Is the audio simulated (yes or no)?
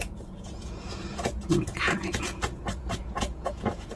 yes